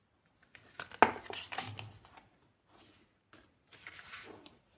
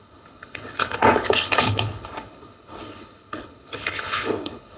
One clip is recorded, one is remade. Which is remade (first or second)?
second